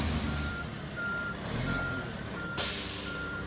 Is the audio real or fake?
fake